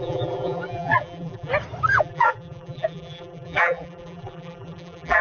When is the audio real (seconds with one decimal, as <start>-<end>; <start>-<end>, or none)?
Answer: 1.5-2.0

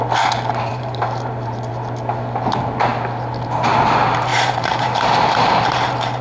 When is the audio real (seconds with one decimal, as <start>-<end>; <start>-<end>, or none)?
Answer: 0.0-0.7; 1.7-4.3

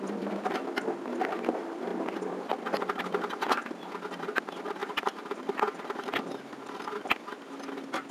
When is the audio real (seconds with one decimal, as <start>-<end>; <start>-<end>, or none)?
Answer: 0.0-8.1

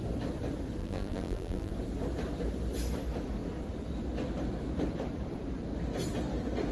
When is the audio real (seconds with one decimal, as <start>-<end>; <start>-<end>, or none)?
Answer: 0.0-0.8; 1.7-6.7